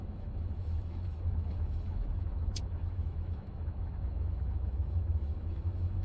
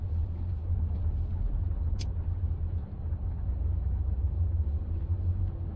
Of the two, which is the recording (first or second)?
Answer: second